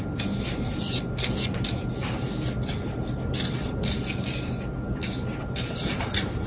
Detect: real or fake real